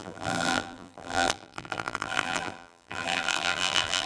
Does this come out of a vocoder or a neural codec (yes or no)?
yes